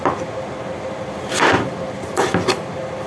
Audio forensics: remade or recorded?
recorded